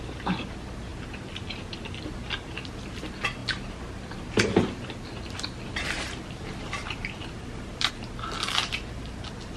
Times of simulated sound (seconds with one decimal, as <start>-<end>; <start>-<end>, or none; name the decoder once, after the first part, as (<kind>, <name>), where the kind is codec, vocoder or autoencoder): 3.4-7.9 (vocoder, BigVGAN v2)